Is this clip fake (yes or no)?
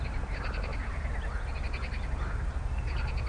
no